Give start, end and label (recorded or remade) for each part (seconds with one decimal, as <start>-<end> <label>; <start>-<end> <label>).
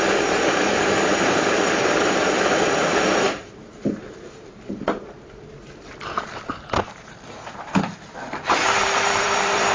0.0-9.7 remade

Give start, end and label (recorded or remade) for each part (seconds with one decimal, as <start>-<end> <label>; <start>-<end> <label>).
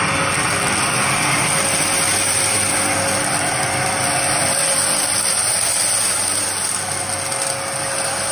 0.0-4.4 recorded; 4.4-5.8 remade; 5.8-8.3 recorded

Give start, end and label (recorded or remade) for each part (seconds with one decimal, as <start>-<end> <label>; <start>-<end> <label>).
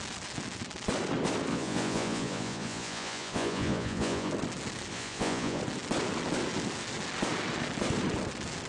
0.0-1.5 recorded; 1.5-4.3 remade; 4.3-4.9 recorded; 4.9-5.6 remade; 5.6-8.7 recorded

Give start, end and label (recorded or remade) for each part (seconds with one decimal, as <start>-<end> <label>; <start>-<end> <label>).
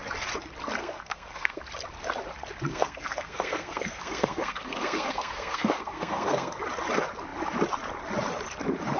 0.0-0.8 recorded; 0.8-1.6 remade; 1.6-2.7 recorded; 2.7-6.6 remade; 6.6-9.0 recorded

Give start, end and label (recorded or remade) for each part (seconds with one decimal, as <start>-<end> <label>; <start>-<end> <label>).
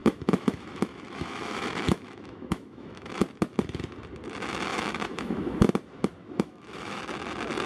0.0-3.2 remade; 3.2-4.7 recorded; 4.7-5.7 remade; 5.7-6.2 recorded; 6.2-7.0 remade; 7.0-7.7 recorded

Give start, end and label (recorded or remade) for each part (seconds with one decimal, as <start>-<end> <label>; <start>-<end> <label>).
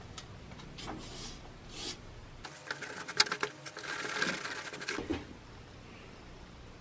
0.0-6.8 recorded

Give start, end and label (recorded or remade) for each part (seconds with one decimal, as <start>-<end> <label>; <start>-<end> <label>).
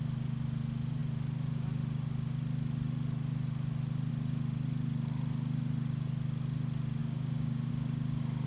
0.0-7.0 recorded; 7.0-7.7 remade; 7.7-8.5 recorded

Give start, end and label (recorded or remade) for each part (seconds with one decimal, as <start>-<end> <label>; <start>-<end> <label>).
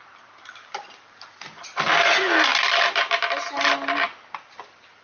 0.0-5.0 recorded